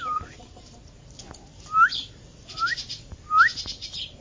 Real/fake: real